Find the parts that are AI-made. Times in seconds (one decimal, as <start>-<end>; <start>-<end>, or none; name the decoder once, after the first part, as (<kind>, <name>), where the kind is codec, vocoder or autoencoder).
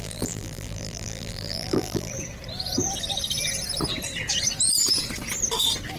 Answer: 0.0-2.1 (vocoder, BigVGAN v2)